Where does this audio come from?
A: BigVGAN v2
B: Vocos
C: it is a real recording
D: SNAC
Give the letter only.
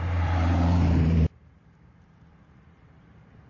A